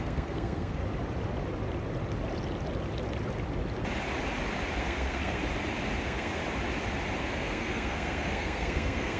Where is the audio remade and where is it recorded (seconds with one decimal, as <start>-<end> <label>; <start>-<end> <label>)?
0.0-0.8 remade; 0.8-4.8 recorded; 4.8-5.4 remade; 5.4-6.0 recorded; 6.0-6.4 remade; 6.4-7.2 recorded; 7.2-9.2 remade